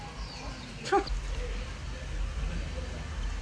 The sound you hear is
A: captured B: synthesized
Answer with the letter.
A